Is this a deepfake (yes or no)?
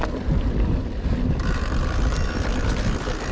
no